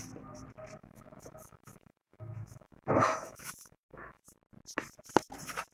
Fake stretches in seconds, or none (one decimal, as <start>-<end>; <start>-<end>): 0.8-4.2